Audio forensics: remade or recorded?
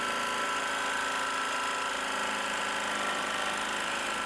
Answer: recorded